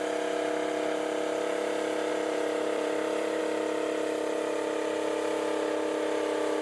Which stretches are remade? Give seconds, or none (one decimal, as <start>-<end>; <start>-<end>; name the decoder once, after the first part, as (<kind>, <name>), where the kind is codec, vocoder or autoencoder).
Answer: 2.1-3.4 (vocoder, BigVGAN v2)